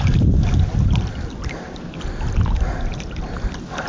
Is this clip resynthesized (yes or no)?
no